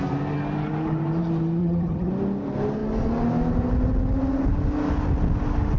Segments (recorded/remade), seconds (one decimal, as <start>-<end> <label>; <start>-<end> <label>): 0.0-1.6 recorded; 1.6-2.1 remade; 2.1-5.8 recorded